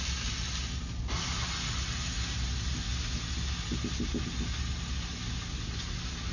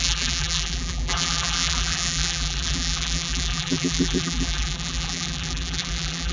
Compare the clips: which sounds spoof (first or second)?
second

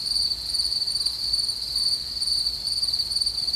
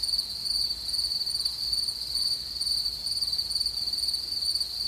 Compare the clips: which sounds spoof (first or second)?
first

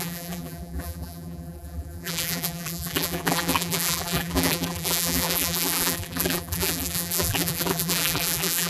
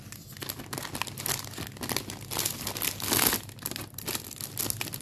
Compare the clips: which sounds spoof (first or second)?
first